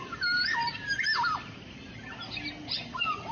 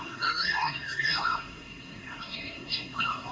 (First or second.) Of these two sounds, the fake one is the second